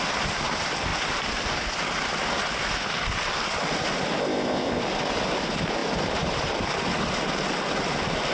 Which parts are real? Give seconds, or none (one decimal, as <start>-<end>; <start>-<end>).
0.0-4.2; 4.8-8.3